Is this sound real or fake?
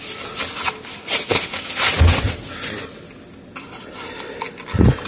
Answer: real